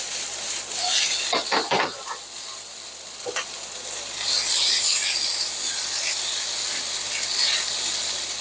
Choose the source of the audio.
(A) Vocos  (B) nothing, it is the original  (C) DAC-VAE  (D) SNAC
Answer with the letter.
B